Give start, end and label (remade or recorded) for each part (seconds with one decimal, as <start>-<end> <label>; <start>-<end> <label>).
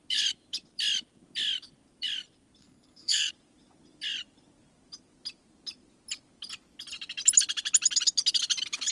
0.0-2.6 recorded; 2.6-3.3 remade; 3.3-8.9 recorded